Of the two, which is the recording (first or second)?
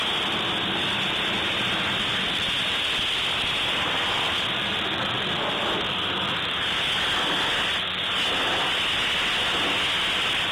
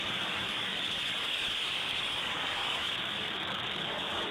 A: first